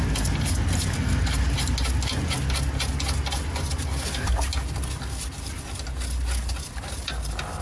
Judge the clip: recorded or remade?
recorded